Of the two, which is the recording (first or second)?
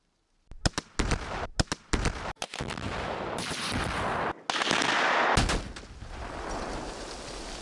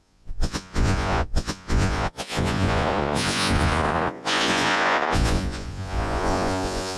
first